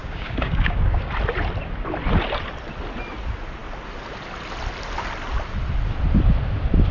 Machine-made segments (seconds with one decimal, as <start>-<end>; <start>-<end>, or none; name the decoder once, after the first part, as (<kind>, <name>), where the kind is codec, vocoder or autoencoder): 0.0-1.1 (codec, DAC)